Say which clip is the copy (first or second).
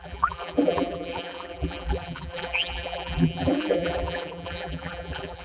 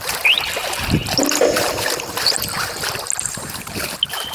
first